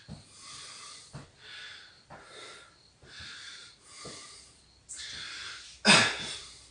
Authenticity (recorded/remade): recorded